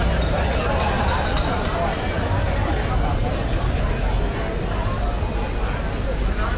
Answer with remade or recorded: recorded